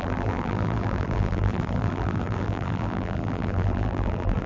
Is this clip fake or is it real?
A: fake